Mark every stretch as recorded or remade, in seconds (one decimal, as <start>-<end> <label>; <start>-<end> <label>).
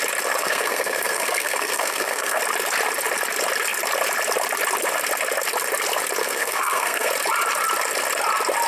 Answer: 0.0-0.4 recorded; 0.4-2.4 remade; 2.4-6.2 recorded; 6.2-7.1 remade; 7.1-8.7 recorded